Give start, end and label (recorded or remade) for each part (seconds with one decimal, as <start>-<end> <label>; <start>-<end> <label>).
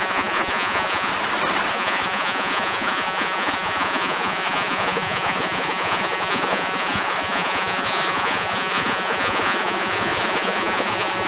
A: 0.0-1.1 remade; 1.1-1.7 recorded; 1.7-11.3 remade